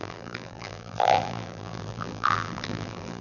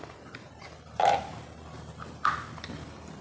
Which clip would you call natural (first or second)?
second